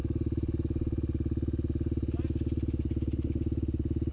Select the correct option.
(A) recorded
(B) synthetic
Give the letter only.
A